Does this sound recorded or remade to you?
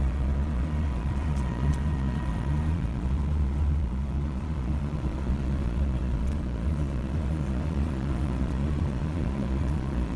remade